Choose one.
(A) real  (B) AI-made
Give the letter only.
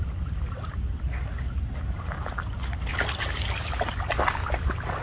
A